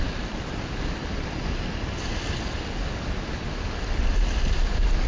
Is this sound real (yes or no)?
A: yes